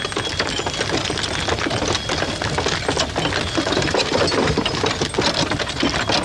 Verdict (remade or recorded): recorded